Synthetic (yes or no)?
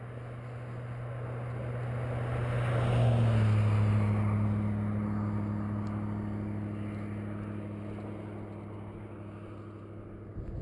no